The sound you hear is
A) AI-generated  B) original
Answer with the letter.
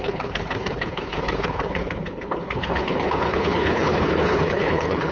A